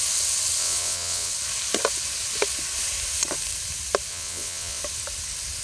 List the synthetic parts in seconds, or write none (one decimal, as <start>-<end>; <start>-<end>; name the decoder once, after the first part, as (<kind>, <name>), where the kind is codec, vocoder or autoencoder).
0.6-1.3 (vocoder, WaveNeXt); 4.1-4.8